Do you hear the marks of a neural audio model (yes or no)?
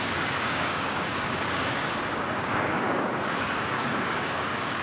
yes